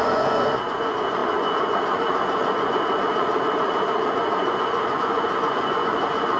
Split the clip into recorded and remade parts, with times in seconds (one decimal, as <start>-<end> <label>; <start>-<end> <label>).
0.0-6.4 remade

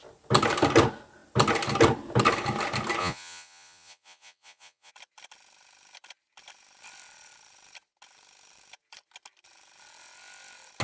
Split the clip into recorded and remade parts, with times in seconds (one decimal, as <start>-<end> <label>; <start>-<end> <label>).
0.0-3.0 recorded; 3.0-4.9 remade; 4.9-10.8 recorded

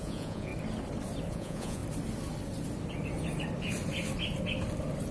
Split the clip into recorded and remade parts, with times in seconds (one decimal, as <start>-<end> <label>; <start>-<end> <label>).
0.0-0.5 remade; 0.5-1.3 recorded; 1.3-1.8 remade; 1.8-5.1 recorded